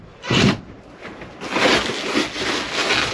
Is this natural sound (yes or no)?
yes